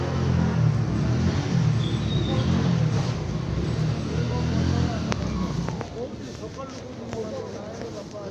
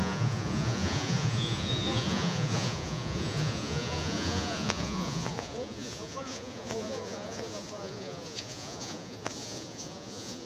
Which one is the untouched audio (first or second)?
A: first